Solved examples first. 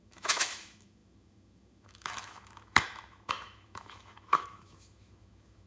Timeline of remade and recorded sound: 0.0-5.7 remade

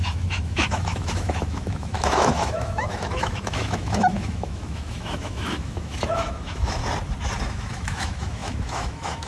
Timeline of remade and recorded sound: 0.0-6.8 remade; 6.8-7.5 recorded; 7.5-9.3 remade

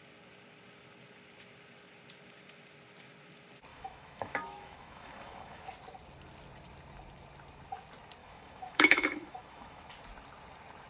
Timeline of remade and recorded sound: 0.0-3.7 recorded; 3.7-5.6 remade; 5.6-8.2 recorded; 8.2-9.9 remade; 9.9-10.9 recorded

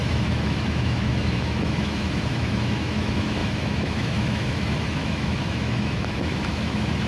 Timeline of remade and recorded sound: 0.0-7.1 remade

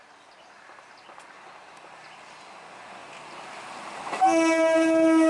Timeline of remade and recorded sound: 0.0-5.3 recorded

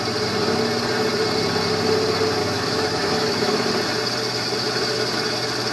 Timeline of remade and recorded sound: 0.0-2.4 recorded; 2.4-3.7 remade; 3.7-5.7 recorded

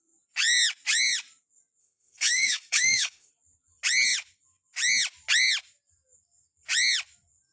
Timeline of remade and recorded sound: 0.0-1.8 recorded; 1.8-3.3 remade; 3.3-7.5 recorded